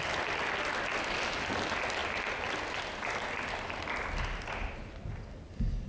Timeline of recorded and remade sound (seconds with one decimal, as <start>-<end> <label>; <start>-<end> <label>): 0.0-5.9 recorded